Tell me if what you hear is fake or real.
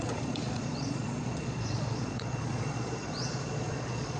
fake